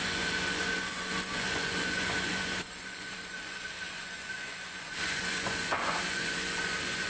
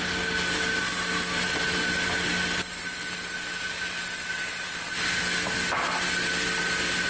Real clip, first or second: second